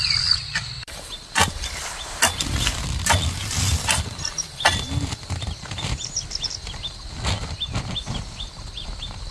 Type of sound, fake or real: real